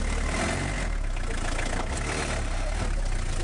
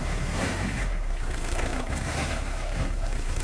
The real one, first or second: first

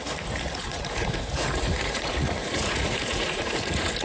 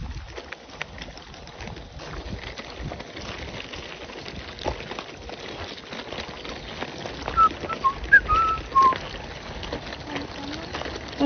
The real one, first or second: second